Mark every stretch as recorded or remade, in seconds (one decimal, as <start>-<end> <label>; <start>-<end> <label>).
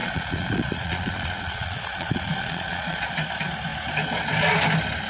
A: 0.0-3.1 remade; 3.1-5.1 recorded